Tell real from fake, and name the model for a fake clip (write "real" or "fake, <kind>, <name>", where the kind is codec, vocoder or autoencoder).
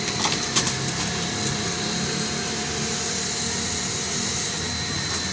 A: real